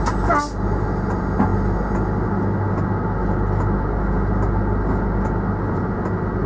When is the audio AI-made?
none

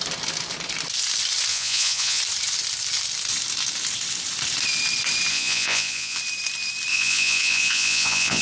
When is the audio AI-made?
1.5-2.2 (vocoder, Vocos); 5.3-6.2; 6.9-8.4

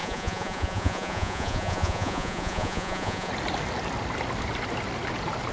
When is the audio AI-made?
0.0-3.3 (vocoder, Vocos)

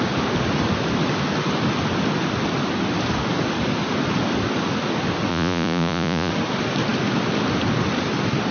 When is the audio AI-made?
5.3-6.3 (vocoder, Vocos)

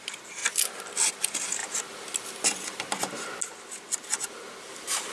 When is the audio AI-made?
none

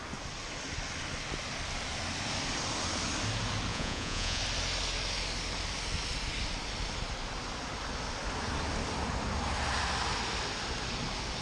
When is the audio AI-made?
3.7-4.4 (vocoder, Vocos)